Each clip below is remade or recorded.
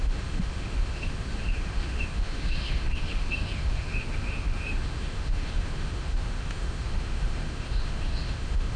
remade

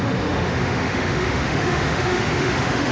remade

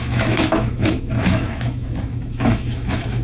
remade